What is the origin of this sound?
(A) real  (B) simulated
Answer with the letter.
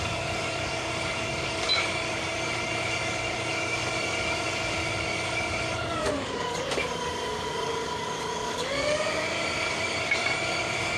B